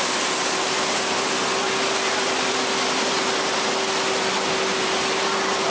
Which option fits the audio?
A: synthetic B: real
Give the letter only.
B